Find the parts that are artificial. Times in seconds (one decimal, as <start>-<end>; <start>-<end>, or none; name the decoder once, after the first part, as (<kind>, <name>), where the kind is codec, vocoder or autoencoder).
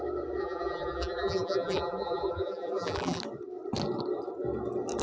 0.4-3.2 (vocoder, BigVGAN v2)